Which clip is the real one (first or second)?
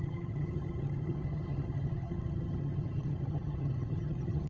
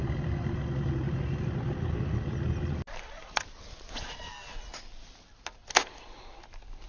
second